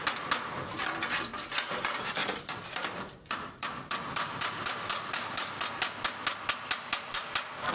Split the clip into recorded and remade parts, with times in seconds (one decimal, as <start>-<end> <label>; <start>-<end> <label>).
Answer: 0.0-0.7 recorded; 0.7-1.5 remade; 1.5-2.2 recorded; 2.2-5.8 remade; 5.8-7.7 recorded